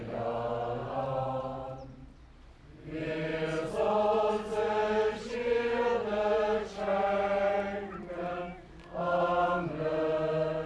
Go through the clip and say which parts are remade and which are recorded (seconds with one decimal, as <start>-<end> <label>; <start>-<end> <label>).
0.0-0.8 recorded; 0.8-1.4 remade; 1.4-3.3 recorded; 3.3-4.3 remade; 4.3-10.7 recorded